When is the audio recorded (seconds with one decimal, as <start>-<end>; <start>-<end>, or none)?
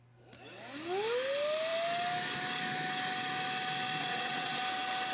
0.0-4.0; 4.6-5.1